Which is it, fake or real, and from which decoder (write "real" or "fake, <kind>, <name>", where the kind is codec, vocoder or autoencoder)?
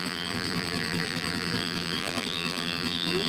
fake, vocoder, BigVGAN v2